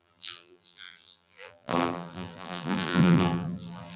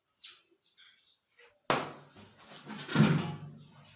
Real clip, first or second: second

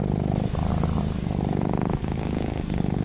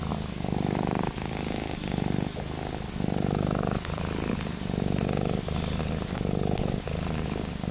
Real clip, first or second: second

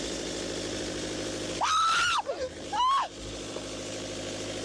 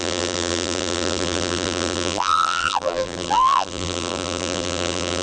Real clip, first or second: first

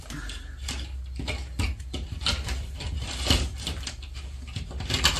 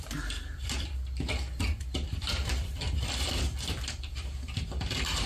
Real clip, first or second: first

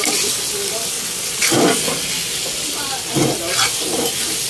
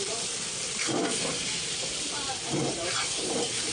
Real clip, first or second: first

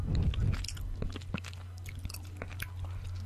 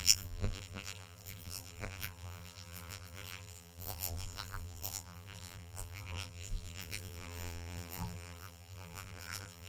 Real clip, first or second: first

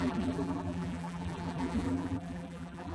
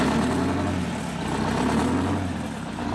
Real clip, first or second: second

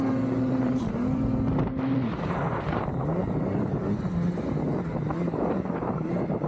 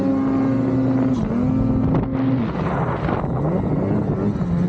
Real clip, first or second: second